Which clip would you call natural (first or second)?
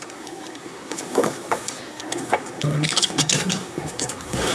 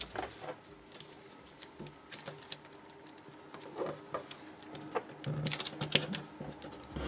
second